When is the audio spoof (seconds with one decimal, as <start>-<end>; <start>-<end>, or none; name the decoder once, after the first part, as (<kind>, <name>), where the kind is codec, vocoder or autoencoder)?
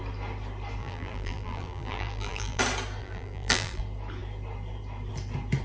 0.8-2.6 (vocoder, BigVGAN v2); 3.0-3.8